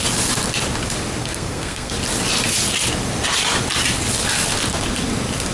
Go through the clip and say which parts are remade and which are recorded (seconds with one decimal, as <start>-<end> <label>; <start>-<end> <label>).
0.0-1.2 recorded; 1.2-1.9 remade; 1.9-5.5 recorded